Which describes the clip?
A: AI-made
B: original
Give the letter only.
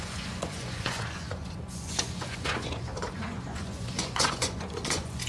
A